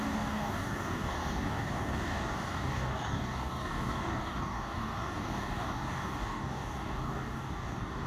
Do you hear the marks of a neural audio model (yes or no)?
yes